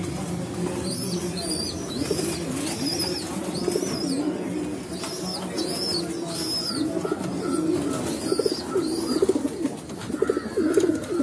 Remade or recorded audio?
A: recorded